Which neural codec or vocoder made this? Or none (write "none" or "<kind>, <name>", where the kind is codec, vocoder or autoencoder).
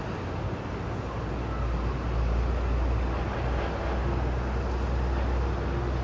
none